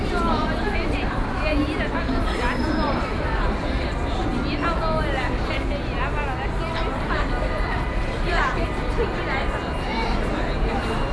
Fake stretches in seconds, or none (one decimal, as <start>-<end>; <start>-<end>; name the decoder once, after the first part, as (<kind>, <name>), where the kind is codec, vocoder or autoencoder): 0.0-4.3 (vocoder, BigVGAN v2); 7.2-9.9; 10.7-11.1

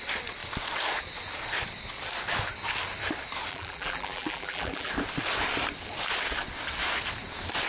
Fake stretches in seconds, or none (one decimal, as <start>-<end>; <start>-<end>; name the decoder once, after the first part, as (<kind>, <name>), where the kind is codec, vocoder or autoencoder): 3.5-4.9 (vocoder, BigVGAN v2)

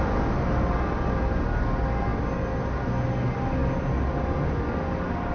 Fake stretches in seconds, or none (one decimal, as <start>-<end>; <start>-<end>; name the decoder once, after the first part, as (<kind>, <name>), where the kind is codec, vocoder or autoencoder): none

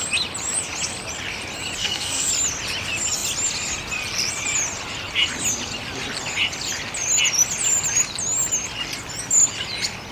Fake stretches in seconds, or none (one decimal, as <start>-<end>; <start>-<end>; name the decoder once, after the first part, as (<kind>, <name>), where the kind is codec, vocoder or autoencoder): 1.8-2.3 (codec, SNAC)

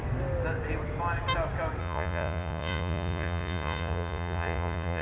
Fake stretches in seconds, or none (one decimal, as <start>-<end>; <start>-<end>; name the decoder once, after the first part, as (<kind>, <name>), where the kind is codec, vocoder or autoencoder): 1.8-5.0 (vocoder, Vocos)

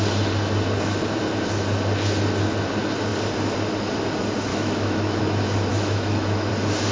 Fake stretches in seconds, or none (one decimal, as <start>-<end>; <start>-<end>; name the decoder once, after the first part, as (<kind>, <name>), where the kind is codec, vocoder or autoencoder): 4.5-5.2 (autoencoder, DAC-VAE); 5.7-6.5

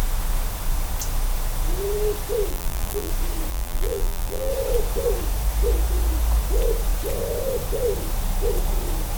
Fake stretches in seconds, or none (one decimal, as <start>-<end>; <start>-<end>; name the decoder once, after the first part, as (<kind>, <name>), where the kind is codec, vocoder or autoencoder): 2.5-3.1 (vocoder, BigVGAN v2); 3.5-4.5